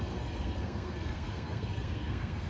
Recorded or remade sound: remade